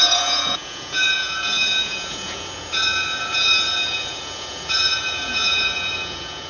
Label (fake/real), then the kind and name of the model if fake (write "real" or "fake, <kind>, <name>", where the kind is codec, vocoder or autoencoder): fake, vocoder, Vocos